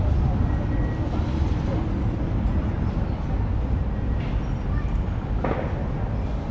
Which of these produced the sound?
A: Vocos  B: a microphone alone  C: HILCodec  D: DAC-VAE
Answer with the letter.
B